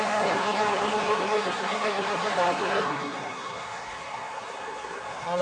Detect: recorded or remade remade